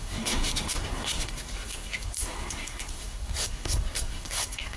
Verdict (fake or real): fake